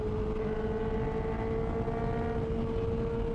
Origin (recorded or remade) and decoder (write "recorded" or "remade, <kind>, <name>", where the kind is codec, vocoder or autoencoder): recorded